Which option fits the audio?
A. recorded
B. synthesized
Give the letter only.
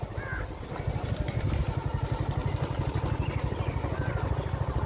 A